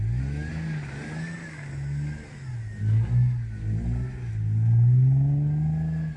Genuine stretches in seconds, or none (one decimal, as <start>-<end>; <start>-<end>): 0.0-6.2

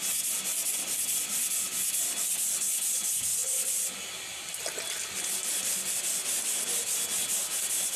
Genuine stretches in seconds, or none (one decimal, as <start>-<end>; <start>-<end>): 0.0-8.0

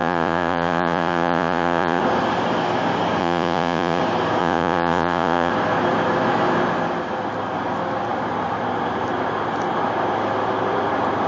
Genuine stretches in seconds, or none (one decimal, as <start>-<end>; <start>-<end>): 2.0-3.2; 4.0-4.4; 5.5-11.3